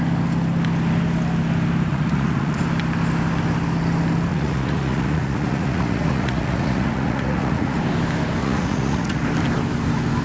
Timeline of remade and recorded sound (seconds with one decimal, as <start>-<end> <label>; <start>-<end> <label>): 0.0-1.9 recorded; 1.9-2.6 remade; 2.6-4.3 recorded; 4.3-7.8 remade; 7.8-8.4 recorded; 8.4-9.2 remade; 9.2-10.2 recorded